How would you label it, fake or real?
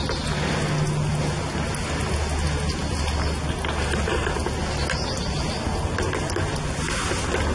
real